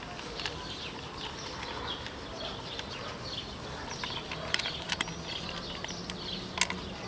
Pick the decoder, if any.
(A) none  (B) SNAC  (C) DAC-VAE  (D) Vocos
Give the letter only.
A